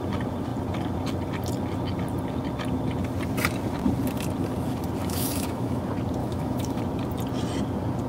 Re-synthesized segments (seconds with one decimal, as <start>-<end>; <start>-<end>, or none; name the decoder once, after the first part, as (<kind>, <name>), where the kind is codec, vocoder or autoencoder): 5.0-5.8 (autoencoder, DAC-VAE); 6.2-6.8